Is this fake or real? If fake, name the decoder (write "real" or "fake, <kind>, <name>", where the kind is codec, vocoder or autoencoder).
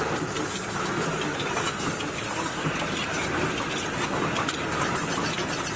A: real